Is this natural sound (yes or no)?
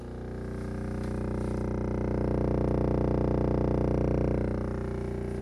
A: yes